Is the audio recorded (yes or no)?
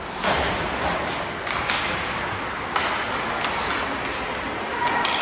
yes